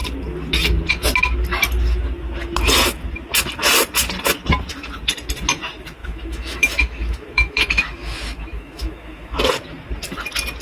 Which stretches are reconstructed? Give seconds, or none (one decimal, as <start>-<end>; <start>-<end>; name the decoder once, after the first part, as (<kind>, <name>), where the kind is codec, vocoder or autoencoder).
6.0-9.4 (autoencoder, DAC-VAE)